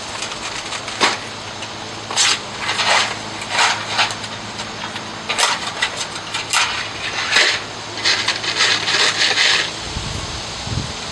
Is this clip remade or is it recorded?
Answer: recorded